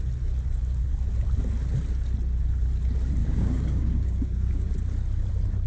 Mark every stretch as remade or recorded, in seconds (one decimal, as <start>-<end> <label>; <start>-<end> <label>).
0.0-3.2 recorded; 3.2-4.7 remade; 4.7-5.7 recorded